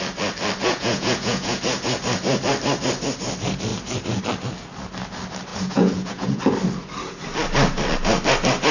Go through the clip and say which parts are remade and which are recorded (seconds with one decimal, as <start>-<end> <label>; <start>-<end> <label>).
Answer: 0.0-0.6 recorded; 0.6-1.6 remade; 1.6-5.5 recorded; 5.5-6.4 remade; 6.4-8.7 recorded